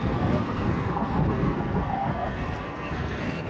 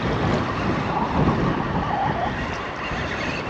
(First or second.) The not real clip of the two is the first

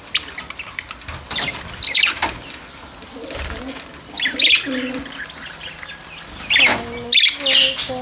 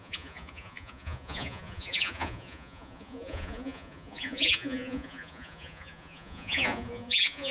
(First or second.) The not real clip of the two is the second